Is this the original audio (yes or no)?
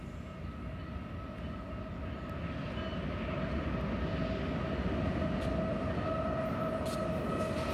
yes